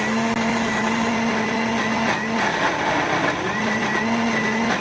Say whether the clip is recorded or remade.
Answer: recorded